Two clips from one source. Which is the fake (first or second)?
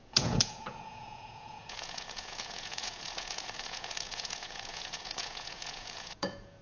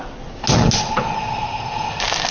first